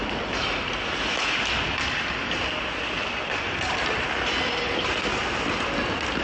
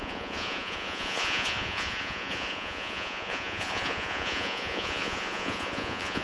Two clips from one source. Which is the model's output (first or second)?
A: second